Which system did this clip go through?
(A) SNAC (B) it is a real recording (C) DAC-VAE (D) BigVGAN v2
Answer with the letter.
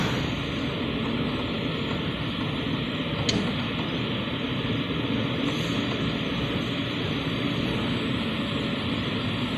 B